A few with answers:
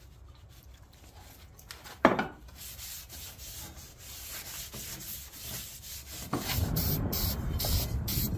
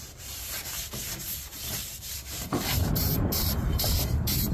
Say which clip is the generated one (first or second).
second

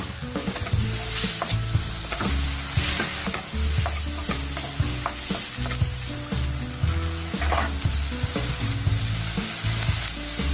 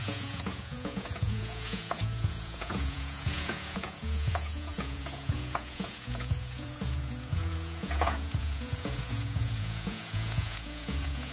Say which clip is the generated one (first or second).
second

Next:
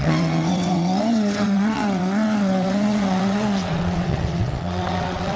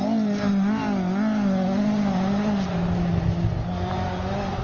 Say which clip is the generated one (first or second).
first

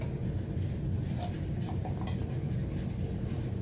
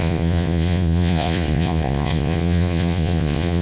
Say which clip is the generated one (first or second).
second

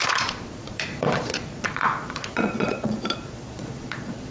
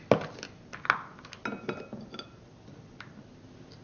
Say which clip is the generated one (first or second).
first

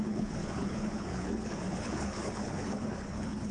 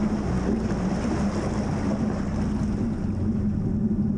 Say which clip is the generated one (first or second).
first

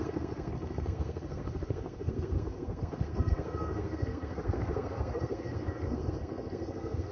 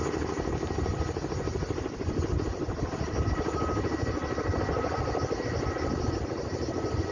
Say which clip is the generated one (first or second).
first